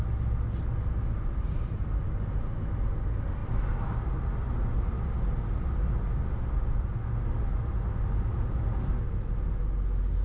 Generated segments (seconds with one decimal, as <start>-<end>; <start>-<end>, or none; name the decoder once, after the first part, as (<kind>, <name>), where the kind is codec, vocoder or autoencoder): none